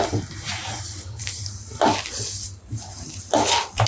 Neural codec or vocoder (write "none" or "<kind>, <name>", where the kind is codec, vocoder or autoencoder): none